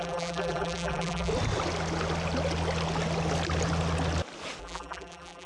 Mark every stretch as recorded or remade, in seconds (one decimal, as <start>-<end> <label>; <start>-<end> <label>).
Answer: 0.0-1.3 remade; 1.3-4.6 recorded; 4.6-5.5 remade